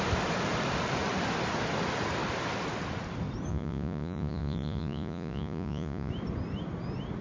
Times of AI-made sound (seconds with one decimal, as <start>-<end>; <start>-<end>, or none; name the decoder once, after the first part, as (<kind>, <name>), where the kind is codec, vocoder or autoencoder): 3.5-6.1 (vocoder, Vocos)